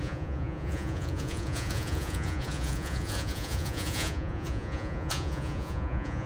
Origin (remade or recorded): remade